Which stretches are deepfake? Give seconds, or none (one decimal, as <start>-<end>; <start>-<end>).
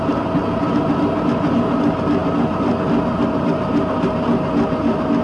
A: 2.2-2.7